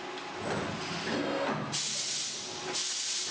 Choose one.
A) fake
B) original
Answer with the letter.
B